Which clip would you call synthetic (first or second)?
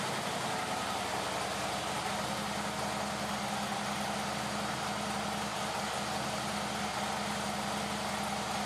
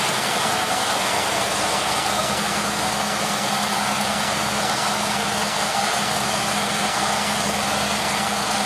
second